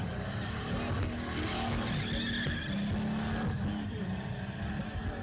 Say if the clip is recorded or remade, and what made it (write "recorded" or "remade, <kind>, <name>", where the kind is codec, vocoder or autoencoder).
recorded